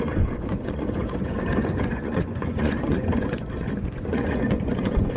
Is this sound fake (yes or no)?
yes